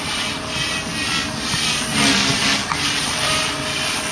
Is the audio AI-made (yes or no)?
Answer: no